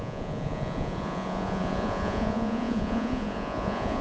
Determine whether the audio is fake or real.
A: fake